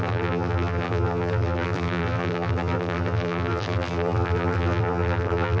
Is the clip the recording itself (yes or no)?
no